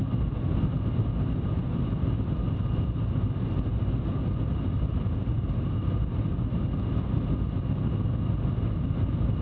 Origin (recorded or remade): recorded